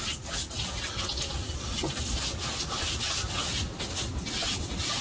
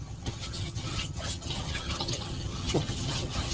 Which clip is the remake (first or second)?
second